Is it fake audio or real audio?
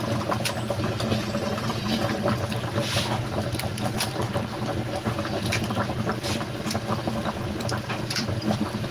fake